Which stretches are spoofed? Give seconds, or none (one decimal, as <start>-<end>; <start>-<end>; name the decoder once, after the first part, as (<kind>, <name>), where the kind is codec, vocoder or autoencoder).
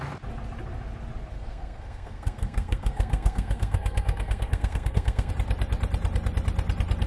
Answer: 1.3-5.3 (codec, SNAC)